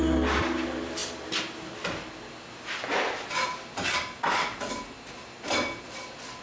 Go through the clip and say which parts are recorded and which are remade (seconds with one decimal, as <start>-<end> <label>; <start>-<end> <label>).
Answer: 0.0-6.4 recorded